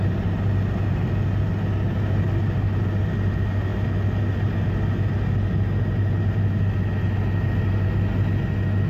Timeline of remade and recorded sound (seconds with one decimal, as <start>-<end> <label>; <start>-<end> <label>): 0.0-8.9 recorded